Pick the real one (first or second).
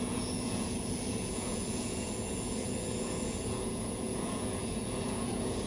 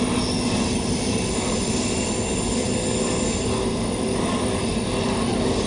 second